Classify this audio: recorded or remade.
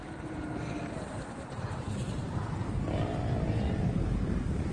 remade